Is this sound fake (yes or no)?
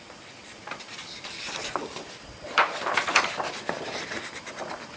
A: yes